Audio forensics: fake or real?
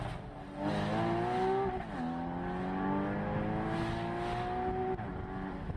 real